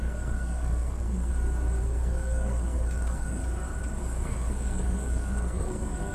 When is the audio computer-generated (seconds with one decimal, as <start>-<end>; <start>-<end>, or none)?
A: 0.0-1.3; 1.8-3.4; 4.0-6.1